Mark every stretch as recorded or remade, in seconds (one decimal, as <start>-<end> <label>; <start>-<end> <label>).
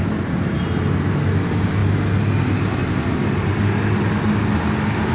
0.0-5.1 recorded